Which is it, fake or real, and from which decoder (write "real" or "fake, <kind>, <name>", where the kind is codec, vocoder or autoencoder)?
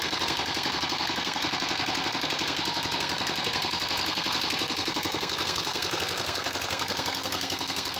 fake, codec, SNAC